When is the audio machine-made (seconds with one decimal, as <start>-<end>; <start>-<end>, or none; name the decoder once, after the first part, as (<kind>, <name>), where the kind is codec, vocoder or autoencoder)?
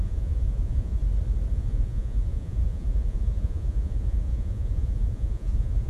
0.0-1.0 (vocoder, Vocos); 1.5-5.9